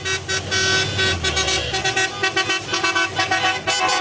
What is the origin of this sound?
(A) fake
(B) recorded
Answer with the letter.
B